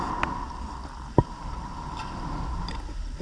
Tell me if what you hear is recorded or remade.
recorded